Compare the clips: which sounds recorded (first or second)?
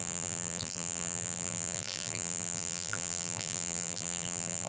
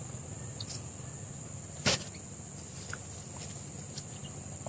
second